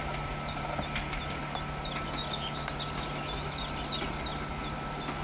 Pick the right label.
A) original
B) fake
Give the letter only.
A